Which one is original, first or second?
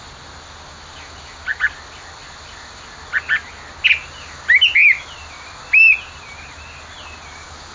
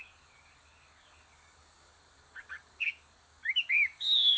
first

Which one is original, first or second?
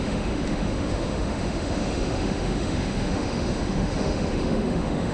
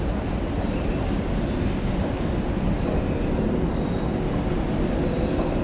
second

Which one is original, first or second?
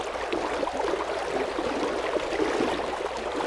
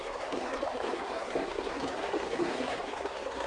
first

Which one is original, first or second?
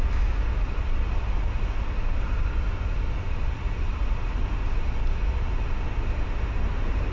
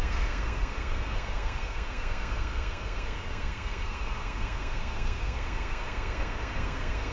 first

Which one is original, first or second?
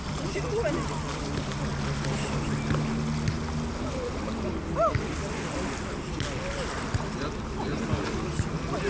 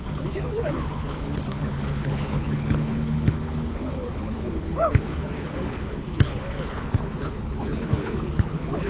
first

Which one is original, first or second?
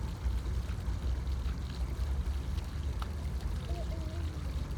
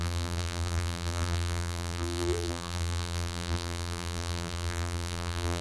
first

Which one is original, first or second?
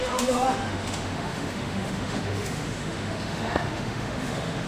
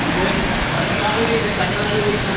second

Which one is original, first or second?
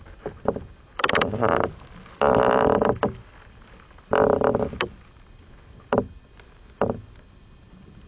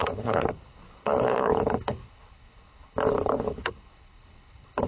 first